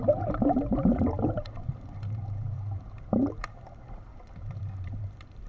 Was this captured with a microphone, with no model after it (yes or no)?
no